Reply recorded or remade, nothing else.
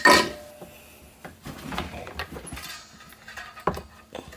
recorded